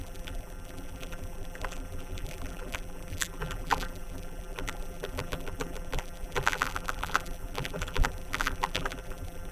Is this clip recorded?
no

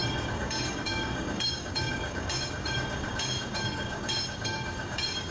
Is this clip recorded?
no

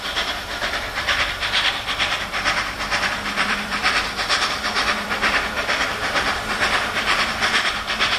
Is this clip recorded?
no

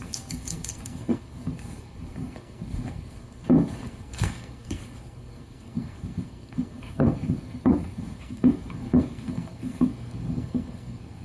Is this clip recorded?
no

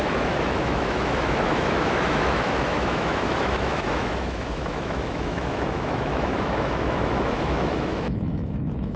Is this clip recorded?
no